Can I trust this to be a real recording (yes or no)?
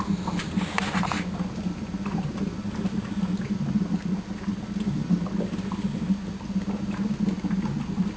yes